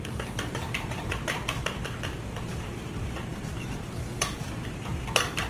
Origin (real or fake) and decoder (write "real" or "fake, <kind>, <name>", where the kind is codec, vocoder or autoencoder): fake, vocoder, BigVGAN v2